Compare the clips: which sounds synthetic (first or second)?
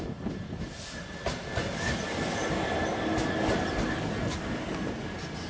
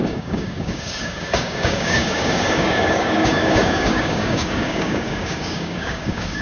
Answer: second